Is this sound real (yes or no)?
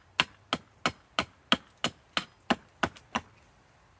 yes